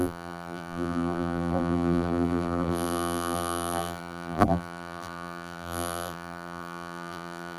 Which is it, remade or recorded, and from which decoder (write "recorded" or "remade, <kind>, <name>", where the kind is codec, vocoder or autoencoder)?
remade, vocoder, BigVGAN v2